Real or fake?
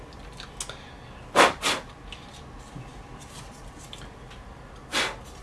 real